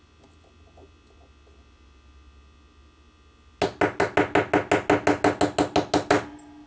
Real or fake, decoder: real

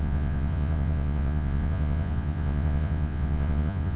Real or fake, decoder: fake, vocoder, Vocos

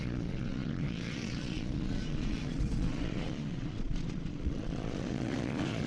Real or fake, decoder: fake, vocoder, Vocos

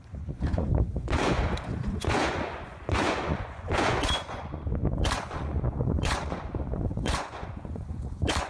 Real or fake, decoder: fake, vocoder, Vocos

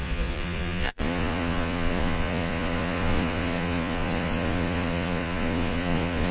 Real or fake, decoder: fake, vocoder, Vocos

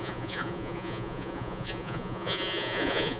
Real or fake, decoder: fake, vocoder, Vocos